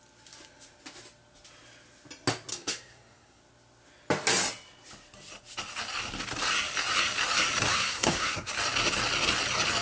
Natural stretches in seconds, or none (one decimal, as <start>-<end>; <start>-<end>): 0.0-2.5; 3.4-7.7; 8.5-9.8